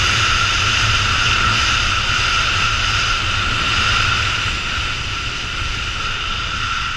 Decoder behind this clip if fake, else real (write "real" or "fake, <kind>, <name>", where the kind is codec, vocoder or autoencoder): real